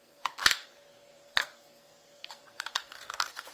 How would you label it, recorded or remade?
remade